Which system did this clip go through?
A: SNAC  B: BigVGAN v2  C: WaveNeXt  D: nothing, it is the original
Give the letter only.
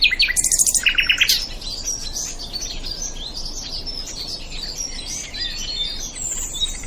D